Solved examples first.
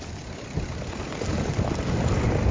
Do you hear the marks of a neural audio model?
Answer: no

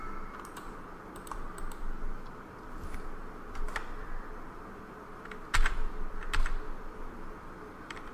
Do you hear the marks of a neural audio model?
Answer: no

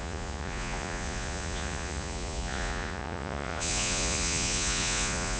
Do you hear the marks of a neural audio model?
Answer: yes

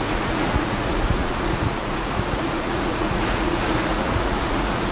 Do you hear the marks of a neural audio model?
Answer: yes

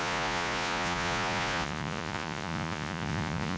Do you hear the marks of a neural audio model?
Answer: yes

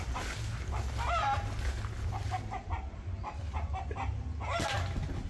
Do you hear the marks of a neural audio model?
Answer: no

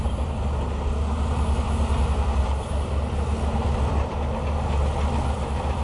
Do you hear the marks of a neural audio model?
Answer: no